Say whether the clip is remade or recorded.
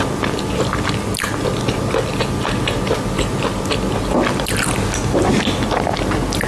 recorded